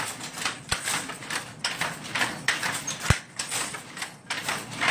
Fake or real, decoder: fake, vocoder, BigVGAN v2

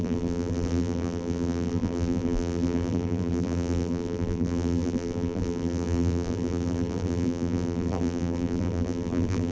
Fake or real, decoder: fake, vocoder, BigVGAN v2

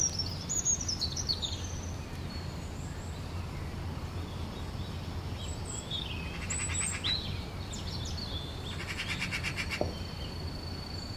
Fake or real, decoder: real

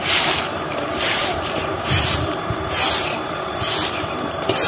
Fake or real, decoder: fake, vocoder, BigVGAN v2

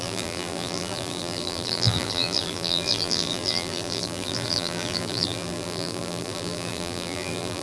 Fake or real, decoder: fake, vocoder, BigVGAN v2